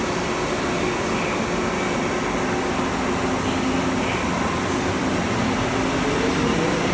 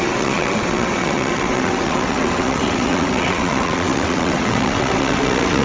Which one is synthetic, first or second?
second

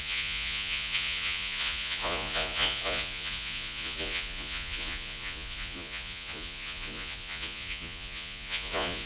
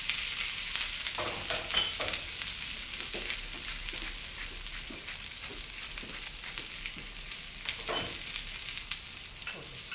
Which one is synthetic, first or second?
first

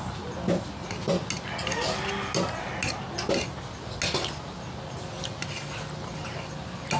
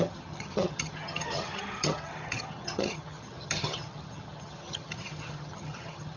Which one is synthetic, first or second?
second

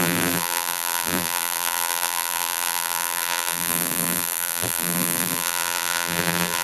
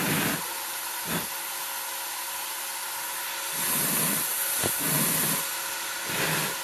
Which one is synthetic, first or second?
first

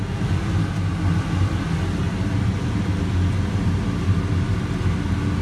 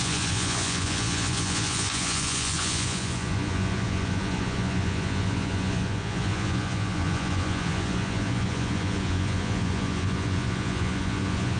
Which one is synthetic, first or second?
second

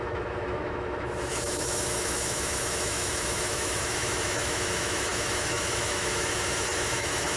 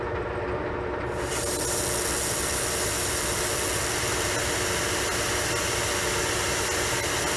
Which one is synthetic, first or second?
first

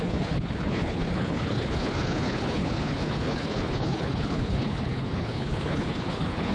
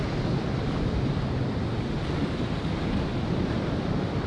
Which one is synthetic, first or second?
first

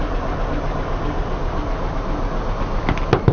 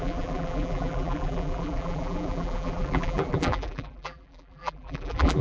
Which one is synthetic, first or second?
second